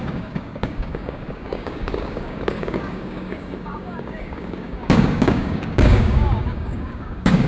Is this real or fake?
fake